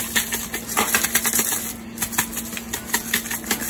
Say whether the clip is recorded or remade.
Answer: recorded